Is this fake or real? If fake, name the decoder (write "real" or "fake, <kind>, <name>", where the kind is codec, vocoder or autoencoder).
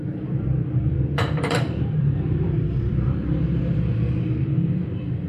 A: fake, vocoder, BigVGAN v2